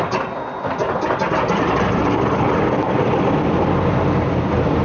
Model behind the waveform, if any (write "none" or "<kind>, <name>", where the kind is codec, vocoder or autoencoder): none